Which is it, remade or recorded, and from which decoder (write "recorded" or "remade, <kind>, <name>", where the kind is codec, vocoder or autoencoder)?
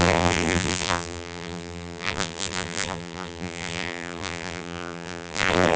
remade, vocoder, BigVGAN v2